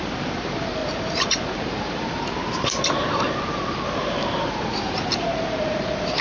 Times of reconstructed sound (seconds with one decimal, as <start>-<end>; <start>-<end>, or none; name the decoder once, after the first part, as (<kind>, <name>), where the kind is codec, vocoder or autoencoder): 0.0-6.2 (vocoder, BigVGAN v2)